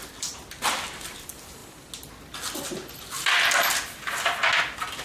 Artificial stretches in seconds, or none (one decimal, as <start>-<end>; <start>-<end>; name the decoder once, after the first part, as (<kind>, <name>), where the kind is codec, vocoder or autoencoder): none